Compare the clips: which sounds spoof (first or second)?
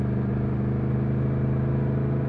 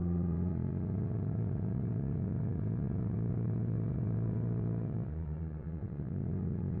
second